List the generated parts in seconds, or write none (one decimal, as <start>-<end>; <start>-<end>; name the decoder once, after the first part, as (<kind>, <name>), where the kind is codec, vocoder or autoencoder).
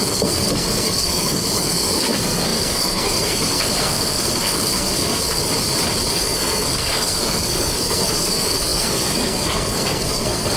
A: 0.0-5.4 (codec, SNAC); 6.1-10.6